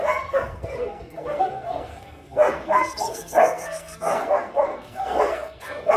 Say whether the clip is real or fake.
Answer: fake